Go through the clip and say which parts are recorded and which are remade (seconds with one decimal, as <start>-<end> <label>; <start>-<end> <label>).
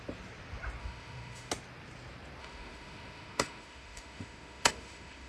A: 0.0-0.8 recorded; 0.8-1.5 remade; 1.5-2.4 recorded; 2.4-5.3 remade